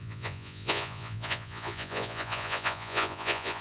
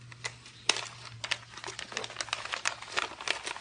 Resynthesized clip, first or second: first